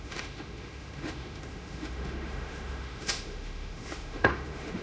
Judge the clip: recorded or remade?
remade